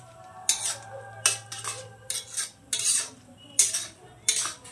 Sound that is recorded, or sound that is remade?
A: recorded